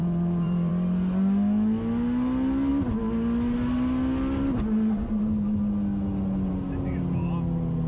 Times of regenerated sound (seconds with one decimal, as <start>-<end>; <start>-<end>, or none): 0.0-0.7